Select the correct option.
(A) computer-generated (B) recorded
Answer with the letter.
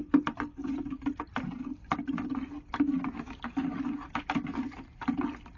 B